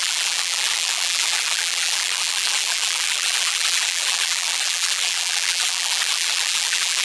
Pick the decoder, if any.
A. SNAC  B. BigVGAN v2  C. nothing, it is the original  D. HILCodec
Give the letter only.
B